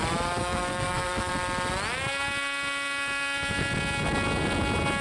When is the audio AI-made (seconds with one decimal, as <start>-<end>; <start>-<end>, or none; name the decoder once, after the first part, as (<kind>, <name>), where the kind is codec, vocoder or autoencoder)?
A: 0.4-1.3 (codec, SNAC)